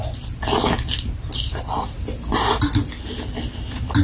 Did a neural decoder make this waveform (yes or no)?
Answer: no